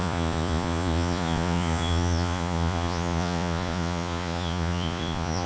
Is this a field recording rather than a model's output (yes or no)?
no